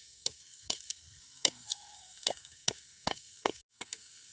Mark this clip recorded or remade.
remade